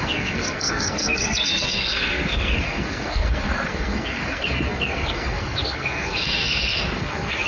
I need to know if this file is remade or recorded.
remade